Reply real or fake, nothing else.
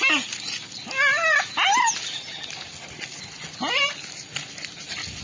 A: real